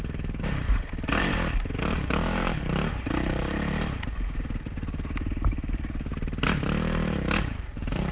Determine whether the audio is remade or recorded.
remade